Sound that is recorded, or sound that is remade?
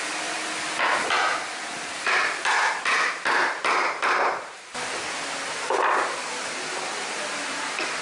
recorded